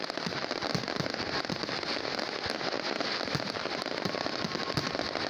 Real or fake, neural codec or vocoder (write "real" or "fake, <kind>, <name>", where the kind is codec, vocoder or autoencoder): real